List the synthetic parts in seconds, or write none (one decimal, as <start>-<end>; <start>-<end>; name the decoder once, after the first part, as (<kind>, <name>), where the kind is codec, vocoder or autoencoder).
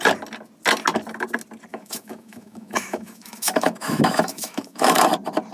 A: 1.7-5.0 (autoencoder, DAC-VAE)